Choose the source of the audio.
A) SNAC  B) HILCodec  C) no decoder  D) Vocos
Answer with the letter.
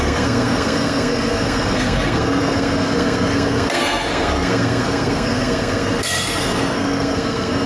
A